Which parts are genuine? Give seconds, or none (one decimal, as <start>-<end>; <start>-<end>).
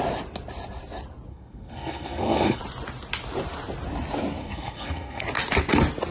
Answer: 0.0-1.3; 2.6-4.4; 5.2-6.1